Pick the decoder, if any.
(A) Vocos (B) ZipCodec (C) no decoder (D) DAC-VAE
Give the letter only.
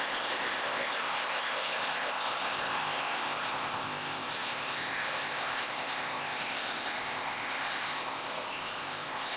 B